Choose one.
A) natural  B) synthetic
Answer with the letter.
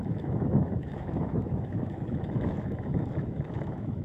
B